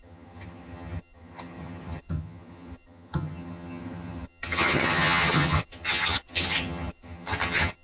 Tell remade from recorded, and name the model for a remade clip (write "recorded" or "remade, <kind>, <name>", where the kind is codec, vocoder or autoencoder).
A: remade, vocoder, HiFi-GAN